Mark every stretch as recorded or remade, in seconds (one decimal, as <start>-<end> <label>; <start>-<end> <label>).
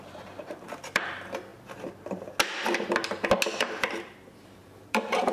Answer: 0.0-1.5 remade; 1.5-3.9 recorded; 3.9-5.3 remade